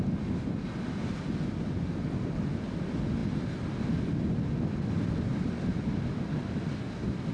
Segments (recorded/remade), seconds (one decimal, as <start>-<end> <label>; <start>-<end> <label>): 0.0-7.3 recorded